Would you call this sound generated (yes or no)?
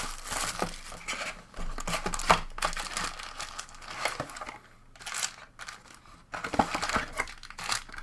no